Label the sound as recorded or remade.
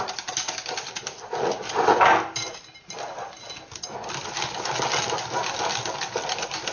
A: recorded